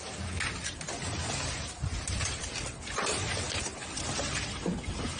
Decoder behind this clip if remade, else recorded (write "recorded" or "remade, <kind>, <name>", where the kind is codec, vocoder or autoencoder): recorded